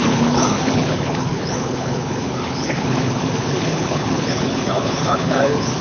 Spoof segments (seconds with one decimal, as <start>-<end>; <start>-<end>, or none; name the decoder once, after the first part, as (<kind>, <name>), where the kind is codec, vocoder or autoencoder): 0.0-5.8 (codec, HILCodec)